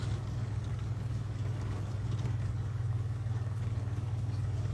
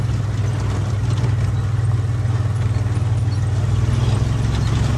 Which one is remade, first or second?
first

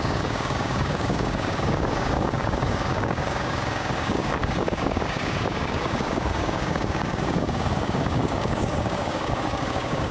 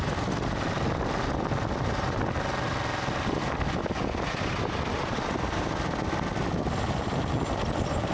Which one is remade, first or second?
first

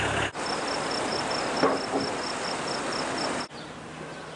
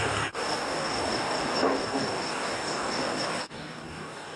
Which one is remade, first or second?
second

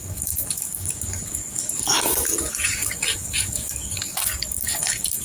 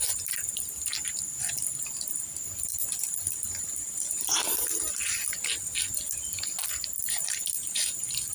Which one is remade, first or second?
first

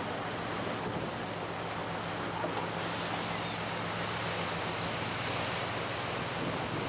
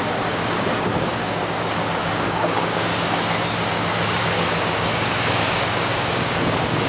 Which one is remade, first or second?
second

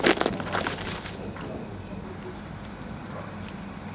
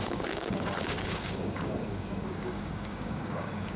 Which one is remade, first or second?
second